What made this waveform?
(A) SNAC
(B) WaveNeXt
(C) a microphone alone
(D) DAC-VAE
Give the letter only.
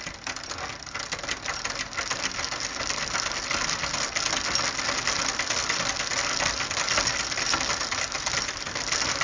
C